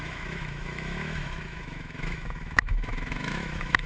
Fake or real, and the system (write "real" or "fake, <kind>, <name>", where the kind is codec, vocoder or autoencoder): fake, autoencoder, DAC-VAE